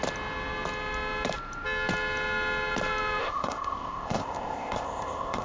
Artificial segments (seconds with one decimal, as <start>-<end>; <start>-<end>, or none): 3.2-5.4